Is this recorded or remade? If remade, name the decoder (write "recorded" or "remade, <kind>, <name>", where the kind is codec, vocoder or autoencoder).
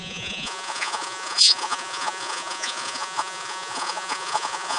remade, vocoder, Vocos